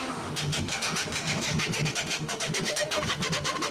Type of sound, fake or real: fake